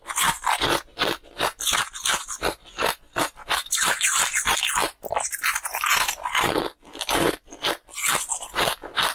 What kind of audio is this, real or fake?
real